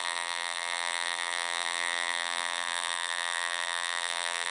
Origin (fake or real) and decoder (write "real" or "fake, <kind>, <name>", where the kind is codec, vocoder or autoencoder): fake, vocoder, BigVGAN v2